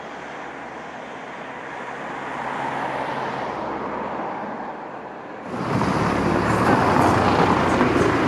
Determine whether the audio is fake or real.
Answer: real